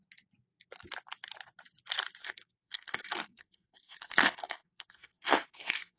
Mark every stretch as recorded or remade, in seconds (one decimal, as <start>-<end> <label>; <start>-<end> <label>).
0.0-2.2 recorded; 2.2-6.0 remade